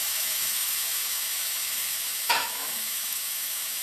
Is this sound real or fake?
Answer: fake